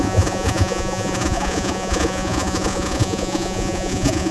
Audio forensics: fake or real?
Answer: fake